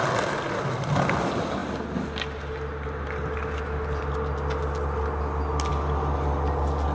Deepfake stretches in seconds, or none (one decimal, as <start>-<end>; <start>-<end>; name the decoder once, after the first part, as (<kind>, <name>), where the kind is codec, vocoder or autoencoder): none